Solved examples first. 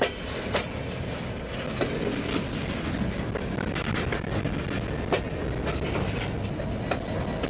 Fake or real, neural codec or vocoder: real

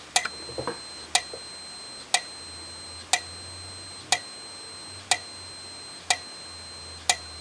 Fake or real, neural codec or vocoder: real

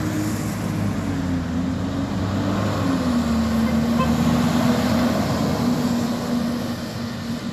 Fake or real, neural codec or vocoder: real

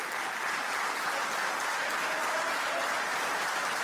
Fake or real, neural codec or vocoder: real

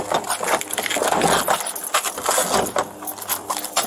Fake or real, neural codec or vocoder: real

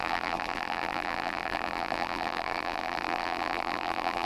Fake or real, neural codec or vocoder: fake, vocoder, BigVGAN v2